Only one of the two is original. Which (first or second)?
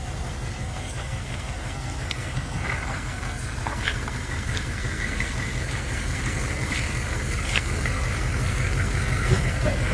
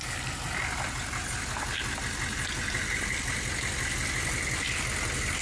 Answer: second